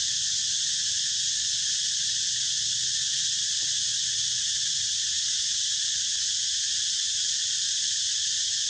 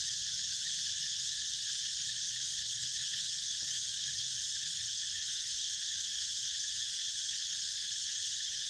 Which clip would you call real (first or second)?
first